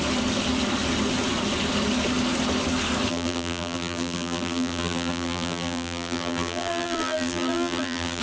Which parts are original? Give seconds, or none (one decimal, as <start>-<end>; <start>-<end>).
0.0-3.1